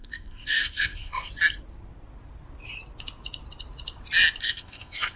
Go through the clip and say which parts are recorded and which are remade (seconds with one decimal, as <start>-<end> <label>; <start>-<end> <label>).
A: 0.0-1.3 remade; 1.3-4.4 recorded; 4.4-5.2 remade